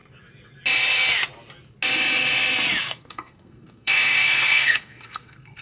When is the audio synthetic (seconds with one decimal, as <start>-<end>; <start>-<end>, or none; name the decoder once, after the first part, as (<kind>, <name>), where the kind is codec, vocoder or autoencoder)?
2.8-5.6 (codec, SNAC)